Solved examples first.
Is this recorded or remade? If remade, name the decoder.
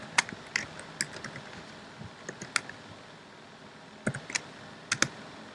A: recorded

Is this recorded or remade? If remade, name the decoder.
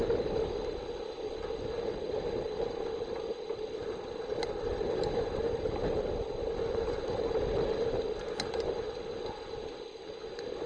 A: recorded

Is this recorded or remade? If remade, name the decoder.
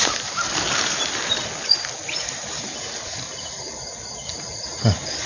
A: recorded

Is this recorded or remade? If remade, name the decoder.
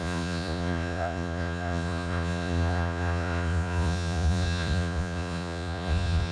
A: remade, vocoder, Vocos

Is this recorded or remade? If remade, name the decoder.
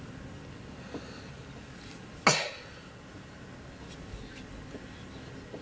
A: recorded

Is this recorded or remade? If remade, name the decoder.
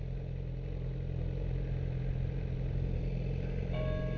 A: recorded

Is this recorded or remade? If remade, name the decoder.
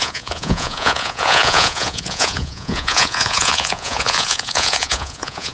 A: remade, vocoder, Vocos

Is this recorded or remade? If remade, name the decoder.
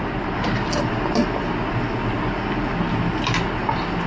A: recorded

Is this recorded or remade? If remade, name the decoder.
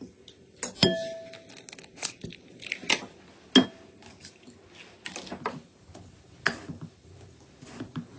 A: recorded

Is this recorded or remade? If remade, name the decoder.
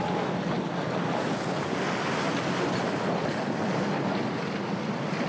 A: recorded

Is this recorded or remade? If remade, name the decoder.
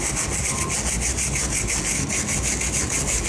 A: recorded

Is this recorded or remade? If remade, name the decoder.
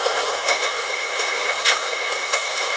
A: remade, codec, SNAC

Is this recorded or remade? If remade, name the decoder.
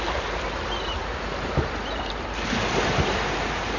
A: recorded